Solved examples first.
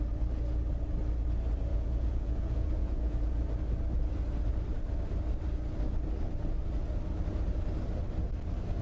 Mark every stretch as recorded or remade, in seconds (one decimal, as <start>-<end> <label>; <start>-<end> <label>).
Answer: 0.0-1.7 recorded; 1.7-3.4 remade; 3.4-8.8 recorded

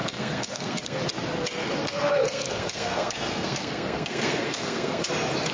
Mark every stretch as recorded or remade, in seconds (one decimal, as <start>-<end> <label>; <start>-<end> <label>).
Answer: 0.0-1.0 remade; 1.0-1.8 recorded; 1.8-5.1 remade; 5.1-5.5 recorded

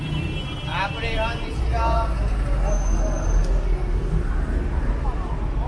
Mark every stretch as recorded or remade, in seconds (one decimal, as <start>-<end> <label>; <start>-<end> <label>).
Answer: 0.0-5.7 recorded

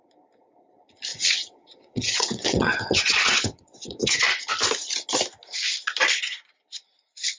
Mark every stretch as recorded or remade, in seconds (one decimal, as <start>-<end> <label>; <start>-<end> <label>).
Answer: 0.0-1.1 recorded; 1.1-4.2 remade; 4.2-7.4 recorded

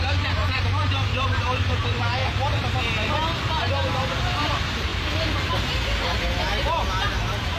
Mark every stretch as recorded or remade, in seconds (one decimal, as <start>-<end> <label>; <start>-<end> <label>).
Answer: 0.0-2.2 remade; 2.2-3.7 recorded; 3.7-7.6 remade